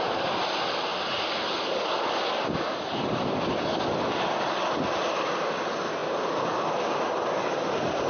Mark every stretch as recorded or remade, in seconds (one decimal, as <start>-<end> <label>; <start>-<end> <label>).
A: 0.0-8.1 recorded